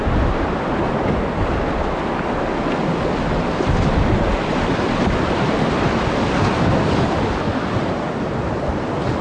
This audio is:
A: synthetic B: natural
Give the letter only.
B